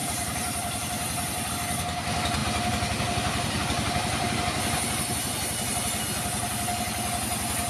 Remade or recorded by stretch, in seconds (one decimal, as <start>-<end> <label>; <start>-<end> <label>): 0.0-1.5 remade; 1.5-7.7 recorded